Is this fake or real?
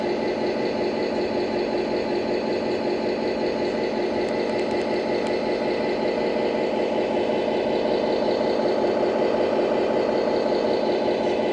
real